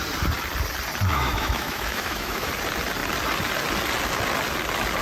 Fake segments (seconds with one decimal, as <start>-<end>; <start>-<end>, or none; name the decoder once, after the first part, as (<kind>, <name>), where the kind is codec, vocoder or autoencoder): 1.1-2.5 (autoencoder, DAC-VAE)